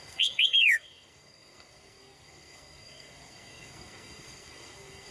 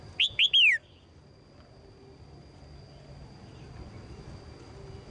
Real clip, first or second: second